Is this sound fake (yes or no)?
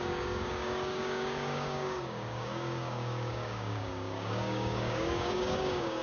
yes